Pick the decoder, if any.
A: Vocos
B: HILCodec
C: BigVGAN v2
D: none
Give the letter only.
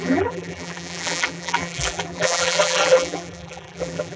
C